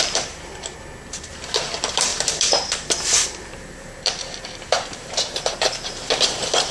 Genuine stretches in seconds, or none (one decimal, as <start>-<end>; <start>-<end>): 0.5-1.1

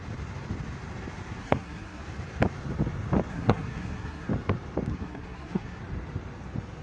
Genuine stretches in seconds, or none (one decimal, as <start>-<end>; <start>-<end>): 0.0-1.4; 2.0-3.3; 4.3-4.9; 5.8-6.8